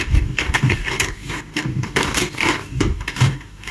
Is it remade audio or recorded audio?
remade